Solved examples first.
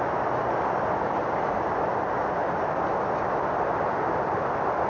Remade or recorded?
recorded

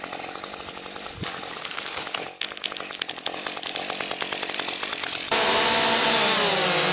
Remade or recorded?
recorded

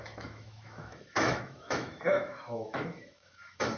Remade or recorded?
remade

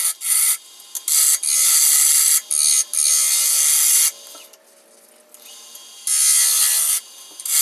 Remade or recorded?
recorded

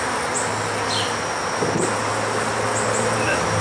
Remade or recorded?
recorded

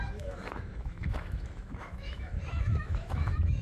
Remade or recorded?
remade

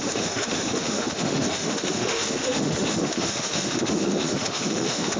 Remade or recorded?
remade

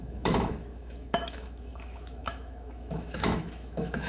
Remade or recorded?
remade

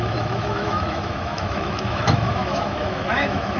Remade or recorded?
remade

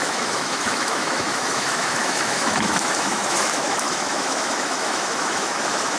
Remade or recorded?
remade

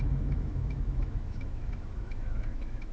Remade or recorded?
remade